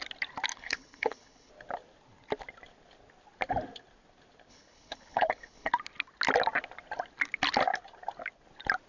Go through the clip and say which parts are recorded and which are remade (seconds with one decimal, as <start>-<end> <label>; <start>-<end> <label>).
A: 0.0-0.5 recorded; 0.5-1.5 remade; 1.5-4.5 recorded; 4.5-5.7 remade; 5.7-8.9 recorded